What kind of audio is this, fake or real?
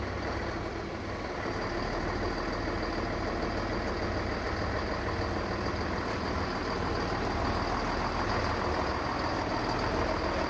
real